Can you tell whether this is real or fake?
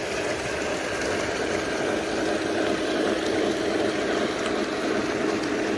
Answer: real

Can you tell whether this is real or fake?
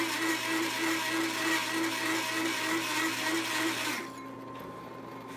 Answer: real